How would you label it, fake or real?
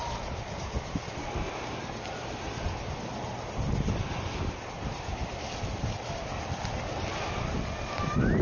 real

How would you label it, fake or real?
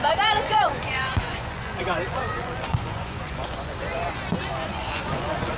fake